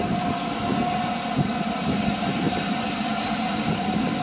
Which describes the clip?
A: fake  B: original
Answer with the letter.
B